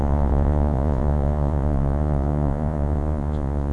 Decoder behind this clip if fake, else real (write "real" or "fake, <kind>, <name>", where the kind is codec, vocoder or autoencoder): fake, vocoder, Vocos